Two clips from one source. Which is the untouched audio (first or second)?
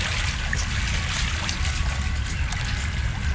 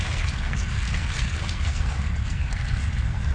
first